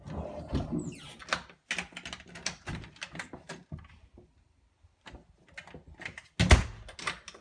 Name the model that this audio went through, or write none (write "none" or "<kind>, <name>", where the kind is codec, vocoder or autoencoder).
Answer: none